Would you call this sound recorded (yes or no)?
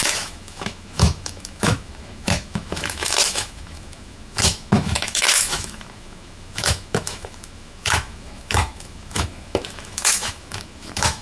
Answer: no